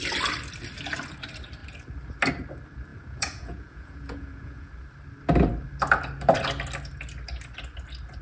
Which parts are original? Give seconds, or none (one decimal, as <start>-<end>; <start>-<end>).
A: 0.0-2.9; 4.7-8.2

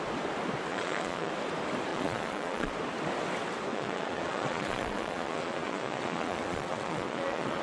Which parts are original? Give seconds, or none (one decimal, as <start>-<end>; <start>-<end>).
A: 0.0-0.7; 1.3-1.9; 2.7-3.7

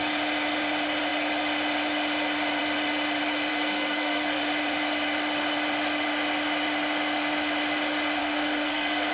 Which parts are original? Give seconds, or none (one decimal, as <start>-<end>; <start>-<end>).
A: 0.0-3.5; 4.4-8.2

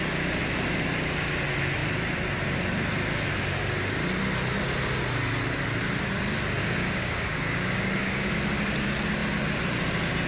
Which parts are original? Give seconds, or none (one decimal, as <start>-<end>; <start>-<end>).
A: 0.0-6.6; 8.3-10.3

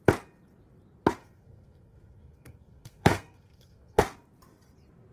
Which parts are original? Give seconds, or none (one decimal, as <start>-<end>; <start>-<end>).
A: 0.0-1.2; 4.0-5.1